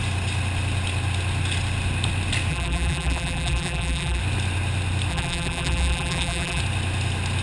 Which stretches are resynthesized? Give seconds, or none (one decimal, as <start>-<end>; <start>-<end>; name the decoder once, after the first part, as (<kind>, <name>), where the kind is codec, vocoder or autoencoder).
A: 2.5-4.2 (vocoder, BigVGAN v2); 5.1-6.6